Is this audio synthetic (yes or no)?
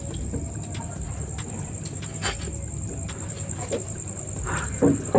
no